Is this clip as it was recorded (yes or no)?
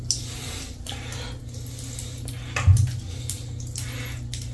yes